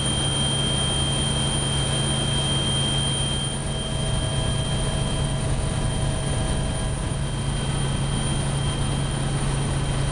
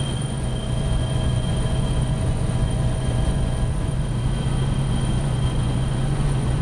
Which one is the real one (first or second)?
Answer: first